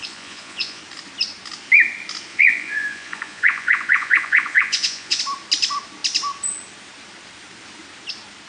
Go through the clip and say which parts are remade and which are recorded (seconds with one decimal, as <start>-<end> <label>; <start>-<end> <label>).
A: 0.0-0.8 remade; 0.8-2.3 recorded; 2.3-5.2 remade; 5.2-8.5 recorded